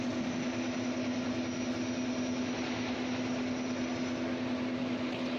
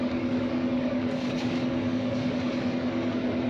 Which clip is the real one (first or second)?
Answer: first